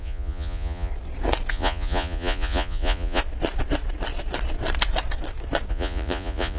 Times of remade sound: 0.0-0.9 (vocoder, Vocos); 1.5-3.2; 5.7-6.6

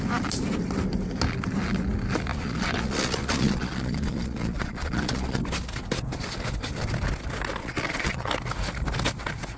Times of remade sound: 2.3-5.4 (vocoder, Vocos); 7.6-8.3

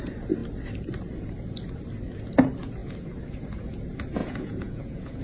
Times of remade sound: 4.2-5.2 (vocoder, Vocos)

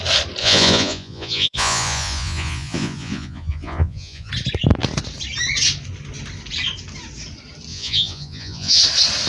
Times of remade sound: 0.4-4.3 (vocoder, Vocos); 7.7-8.8